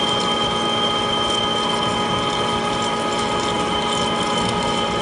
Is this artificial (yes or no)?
no